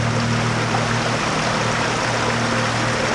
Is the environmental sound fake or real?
real